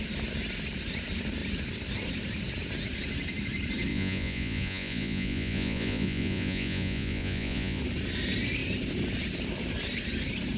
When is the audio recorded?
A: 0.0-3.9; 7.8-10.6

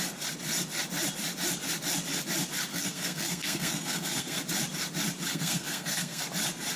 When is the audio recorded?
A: 0.0-2.7; 4.4-5.3; 6.2-6.8

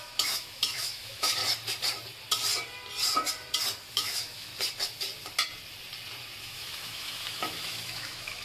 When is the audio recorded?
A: 1.4-3.9; 4.5-6.4

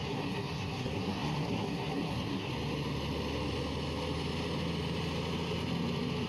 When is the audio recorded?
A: 2.5-6.3